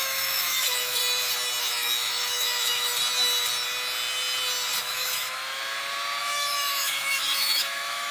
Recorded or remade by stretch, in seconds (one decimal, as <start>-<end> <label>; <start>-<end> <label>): 0.0-1.0 remade; 1.0-1.6 recorded; 1.6-2.9 remade; 2.9-4.8 recorded; 4.8-5.4 remade; 5.4-6.2 recorded; 6.2-8.1 remade